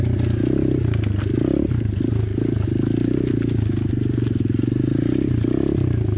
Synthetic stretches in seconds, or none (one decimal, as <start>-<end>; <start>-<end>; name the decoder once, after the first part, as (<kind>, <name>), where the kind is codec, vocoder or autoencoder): none